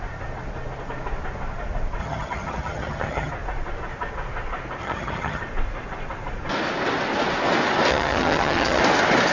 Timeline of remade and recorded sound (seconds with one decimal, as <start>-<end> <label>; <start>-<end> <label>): 0.0-2.0 recorded; 2.0-3.3 remade; 3.3-4.8 recorded; 4.8-5.4 remade; 5.4-7.9 recorded; 7.9-8.8 remade; 8.8-9.3 recorded

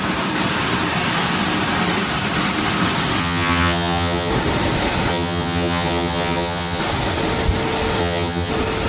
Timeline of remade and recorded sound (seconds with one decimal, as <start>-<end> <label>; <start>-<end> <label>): 0.0-3.2 recorded; 3.2-4.3 remade; 4.3-5.1 recorded; 5.1-6.8 remade; 6.8-8.0 recorded; 8.0-8.5 remade; 8.5-8.9 recorded

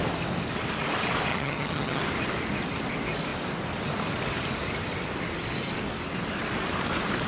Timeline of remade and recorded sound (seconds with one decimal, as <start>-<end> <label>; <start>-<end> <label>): 0.0-1.3 recorded; 1.3-2.0 remade; 2.0-7.3 recorded

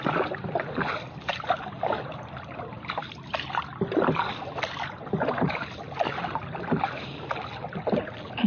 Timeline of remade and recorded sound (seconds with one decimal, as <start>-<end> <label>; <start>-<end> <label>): 0.0-8.5 recorded

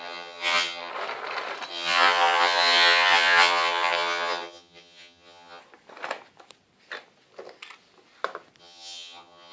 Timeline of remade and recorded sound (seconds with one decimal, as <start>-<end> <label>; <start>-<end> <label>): 0.0-0.9 remade; 0.9-1.7 recorded; 1.7-5.6 remade; 5.6-8.6 recorded; 8.6-9.5 remade

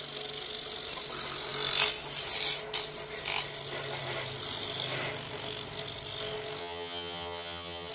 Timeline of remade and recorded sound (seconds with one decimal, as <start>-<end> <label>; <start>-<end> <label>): 0.0-6.6 recorded; 6.6-7.9 remade